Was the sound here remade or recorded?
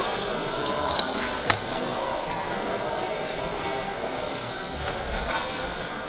remade